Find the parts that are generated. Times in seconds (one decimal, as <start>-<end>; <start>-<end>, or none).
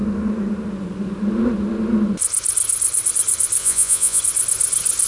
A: 3.6-4.2